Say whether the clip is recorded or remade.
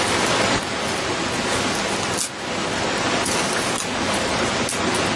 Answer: recorded